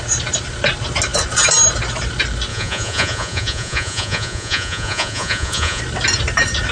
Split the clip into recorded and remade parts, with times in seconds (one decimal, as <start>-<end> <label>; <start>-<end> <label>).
0.0-2.5 recorded; 2.5-5.8 remade; 5.8-6.7 recorded